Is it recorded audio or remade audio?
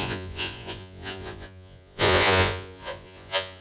remade